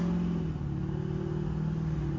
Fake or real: real